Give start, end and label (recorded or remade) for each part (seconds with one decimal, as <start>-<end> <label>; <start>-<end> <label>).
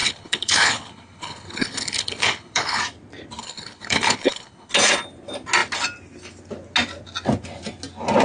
0.0-2.8 remade; 2.8-3.4 recorded; 3.4-4.7 remade; 4.7-8.2 recorded